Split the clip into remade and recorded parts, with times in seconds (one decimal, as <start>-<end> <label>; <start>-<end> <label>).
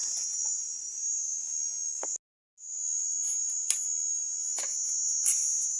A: 0.0-5.8 recorded